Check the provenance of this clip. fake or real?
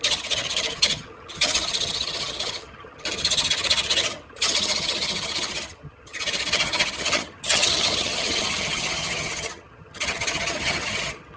fake